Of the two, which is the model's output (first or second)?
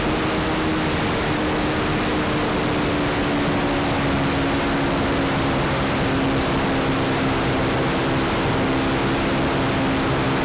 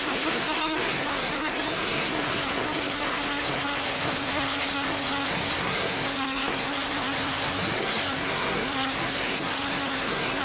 second